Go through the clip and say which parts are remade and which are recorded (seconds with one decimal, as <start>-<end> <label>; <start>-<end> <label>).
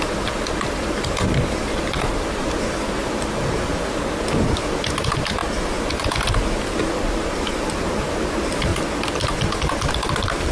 0.0-3.7 remade; 3.7-5.0 recorded; 5.0-5.4 remade; 5.4-7.1 recorded; 7.1-8.7 remade; 8.7-9.9 recorded; 9.9-10.5 remade